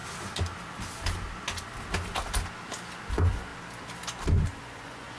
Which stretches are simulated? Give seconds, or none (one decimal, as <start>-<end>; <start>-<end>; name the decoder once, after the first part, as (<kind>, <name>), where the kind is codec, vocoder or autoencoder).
3.1-3.5 (vocoder, Vocos); 4.6-5.2